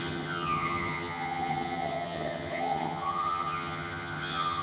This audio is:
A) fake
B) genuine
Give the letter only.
A